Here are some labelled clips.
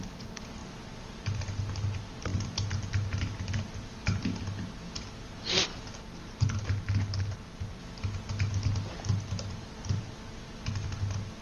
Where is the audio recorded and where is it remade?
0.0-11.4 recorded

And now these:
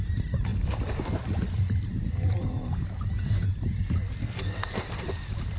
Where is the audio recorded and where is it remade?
0.0-4.2 recorded; 4.2-4.8 remade; 4.8-5.6 recorded

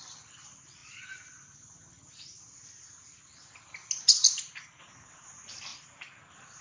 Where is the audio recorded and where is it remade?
0.0-6.6 recorded